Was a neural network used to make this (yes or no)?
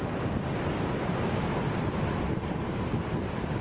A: no